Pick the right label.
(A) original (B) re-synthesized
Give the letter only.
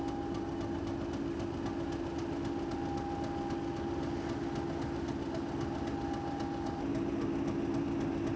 A